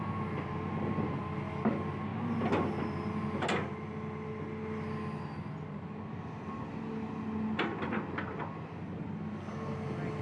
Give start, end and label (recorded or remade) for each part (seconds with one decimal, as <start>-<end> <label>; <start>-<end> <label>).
0.0-10.2 recorded